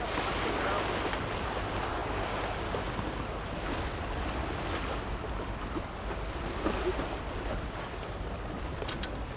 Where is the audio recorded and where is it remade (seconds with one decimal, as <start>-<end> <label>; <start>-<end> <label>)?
0.0-9.4 recorded